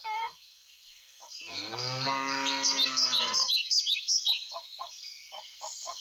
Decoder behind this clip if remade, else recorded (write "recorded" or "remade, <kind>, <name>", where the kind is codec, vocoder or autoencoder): remade, codec, SNAC